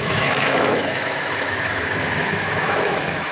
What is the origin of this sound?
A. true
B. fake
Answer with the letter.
B